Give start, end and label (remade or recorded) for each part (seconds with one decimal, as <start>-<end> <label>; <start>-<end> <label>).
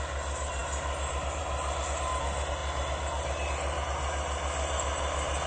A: 0.0-5.5 recorded